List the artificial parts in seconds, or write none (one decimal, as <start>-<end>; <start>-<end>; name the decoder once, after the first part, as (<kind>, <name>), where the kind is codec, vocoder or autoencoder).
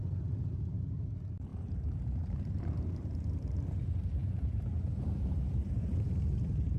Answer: 1.5-3.6 (vocoder, BigVGAN v2); 4.2-6.8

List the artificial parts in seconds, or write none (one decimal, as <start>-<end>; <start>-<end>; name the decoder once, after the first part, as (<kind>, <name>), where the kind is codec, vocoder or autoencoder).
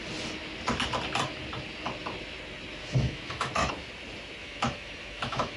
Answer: 2.8-3.7 (autoencoder, DAC-VAE); 4.4-5.6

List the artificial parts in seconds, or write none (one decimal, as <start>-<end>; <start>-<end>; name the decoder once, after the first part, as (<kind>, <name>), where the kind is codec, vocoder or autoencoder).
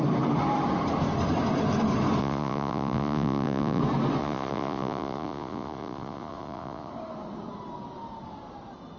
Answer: 2.2-3.8 (vocoder, Vocos); 4.2-6.9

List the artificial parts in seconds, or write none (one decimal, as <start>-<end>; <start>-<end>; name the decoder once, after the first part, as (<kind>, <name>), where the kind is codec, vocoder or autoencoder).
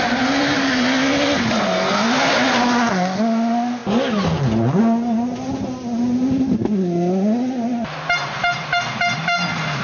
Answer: none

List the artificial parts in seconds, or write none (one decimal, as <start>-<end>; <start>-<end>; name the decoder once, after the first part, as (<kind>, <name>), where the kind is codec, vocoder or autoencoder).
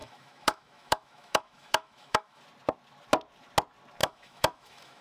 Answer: 0.0-2.4 (autoencoder, DAC-VAE); 4.0-5.0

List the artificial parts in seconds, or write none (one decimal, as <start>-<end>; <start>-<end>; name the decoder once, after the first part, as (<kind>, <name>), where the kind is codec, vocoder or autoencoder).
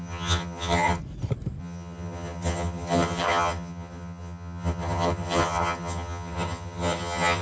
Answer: 0.0-1.0 (vocoder, HiFi-GAN); 1.6-7.4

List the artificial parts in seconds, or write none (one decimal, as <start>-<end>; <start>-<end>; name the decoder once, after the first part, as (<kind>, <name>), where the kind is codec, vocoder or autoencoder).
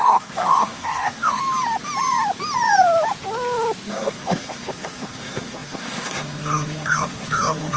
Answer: 0.0-1.4 (codec, SNAC); 3.9-7.8